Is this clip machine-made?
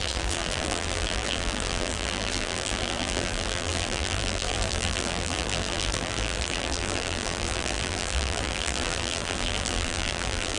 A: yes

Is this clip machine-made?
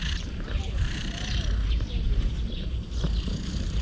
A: yes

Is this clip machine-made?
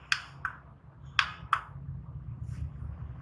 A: no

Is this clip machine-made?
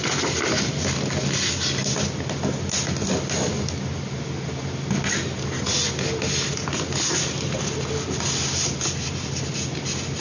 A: no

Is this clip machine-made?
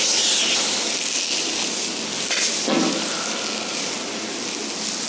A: no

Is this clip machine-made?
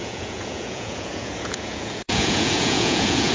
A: yes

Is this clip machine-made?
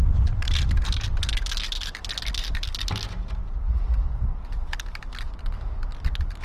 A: no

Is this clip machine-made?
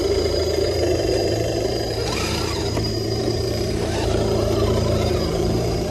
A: yes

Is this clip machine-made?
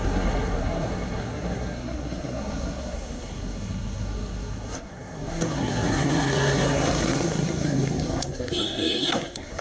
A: yes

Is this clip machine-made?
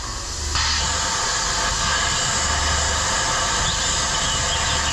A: no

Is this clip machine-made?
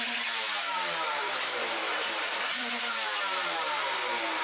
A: yes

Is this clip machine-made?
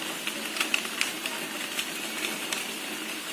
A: no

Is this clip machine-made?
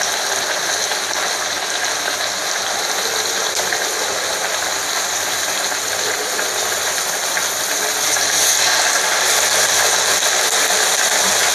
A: no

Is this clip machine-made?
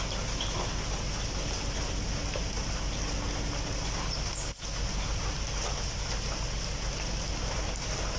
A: no